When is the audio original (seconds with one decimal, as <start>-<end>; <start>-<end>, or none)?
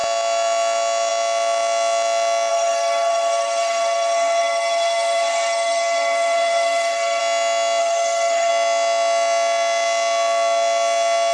0.0-2.5; 7.2-7.8; 8.5-11.3